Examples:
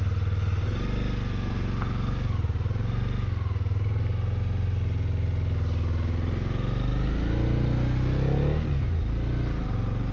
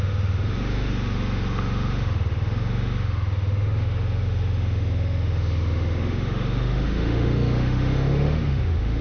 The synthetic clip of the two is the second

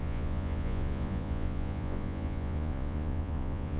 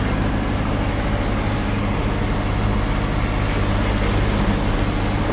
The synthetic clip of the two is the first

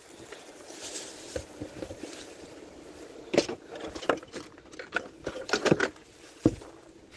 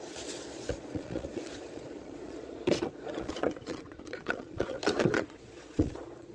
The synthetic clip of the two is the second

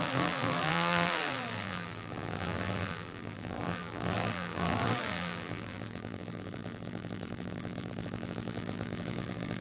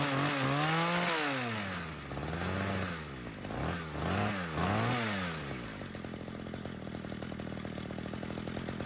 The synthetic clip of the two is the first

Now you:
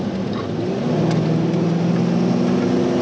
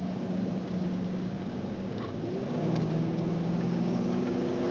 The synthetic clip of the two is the second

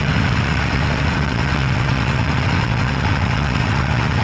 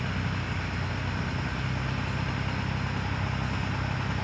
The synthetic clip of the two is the first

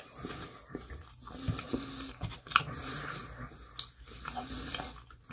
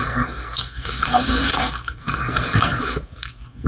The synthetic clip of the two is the second